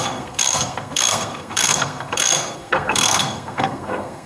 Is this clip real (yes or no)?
no